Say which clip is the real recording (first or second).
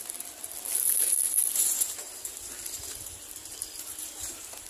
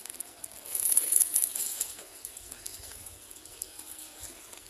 first